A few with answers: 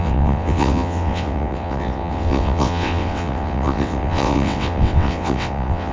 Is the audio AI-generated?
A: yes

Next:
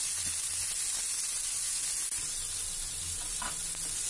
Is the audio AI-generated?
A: no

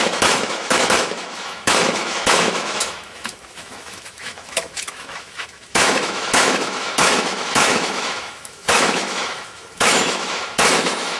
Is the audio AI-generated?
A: yes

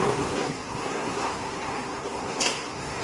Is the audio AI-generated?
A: yes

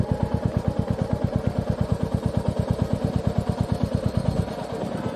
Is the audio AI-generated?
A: yes